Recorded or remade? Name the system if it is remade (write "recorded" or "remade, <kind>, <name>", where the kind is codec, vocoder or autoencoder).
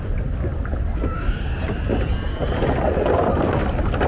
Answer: recorded